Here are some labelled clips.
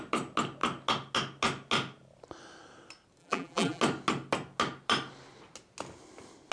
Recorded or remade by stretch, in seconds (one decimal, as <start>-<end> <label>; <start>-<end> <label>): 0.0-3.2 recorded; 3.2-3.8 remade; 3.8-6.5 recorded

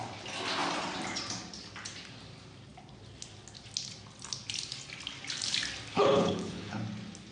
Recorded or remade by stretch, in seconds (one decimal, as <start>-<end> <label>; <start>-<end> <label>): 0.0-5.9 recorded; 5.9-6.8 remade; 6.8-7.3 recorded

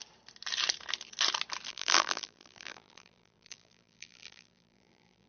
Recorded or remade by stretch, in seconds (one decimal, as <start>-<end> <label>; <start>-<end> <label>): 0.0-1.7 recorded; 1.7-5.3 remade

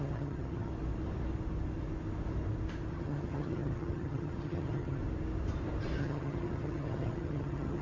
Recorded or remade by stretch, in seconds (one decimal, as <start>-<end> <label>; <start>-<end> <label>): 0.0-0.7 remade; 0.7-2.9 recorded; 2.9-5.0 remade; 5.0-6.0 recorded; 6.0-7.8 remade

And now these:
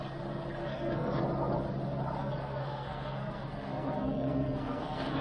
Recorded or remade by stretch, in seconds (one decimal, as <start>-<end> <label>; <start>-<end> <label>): 0.0-0.6 recorded; 0.6-1.2 remade; 1.2-2.2 recorded; 2.2-5.2 remade

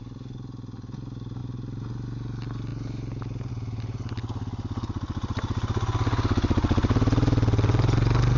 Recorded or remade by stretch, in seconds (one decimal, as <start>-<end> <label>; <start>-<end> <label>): 0.0-8.4 recorded

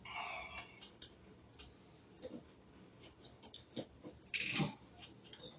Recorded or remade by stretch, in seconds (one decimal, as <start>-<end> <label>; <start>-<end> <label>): 0.0-0.9 recorded; 0.9-1.5 remade; 1.5-2.4 recorded; 2.4-4.1 remade; 4.1-5.6 recorded

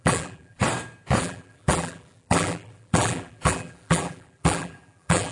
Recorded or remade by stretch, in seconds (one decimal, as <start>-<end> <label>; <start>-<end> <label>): 0.0-0.6 remade; 0.6-1.2 recorded; 1.2-5.3 remade